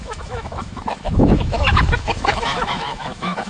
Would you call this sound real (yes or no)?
no